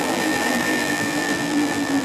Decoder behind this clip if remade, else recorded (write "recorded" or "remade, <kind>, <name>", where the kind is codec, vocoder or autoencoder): remade, vocoder, BigVGAN v2